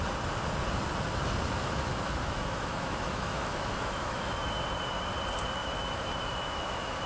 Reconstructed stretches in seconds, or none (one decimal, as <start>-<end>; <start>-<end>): 1.6-4.5; 5.6-7.1